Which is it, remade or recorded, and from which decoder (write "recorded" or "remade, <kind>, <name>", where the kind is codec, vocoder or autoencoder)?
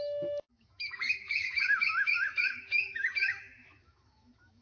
remade, autoencoder, DAC-VAE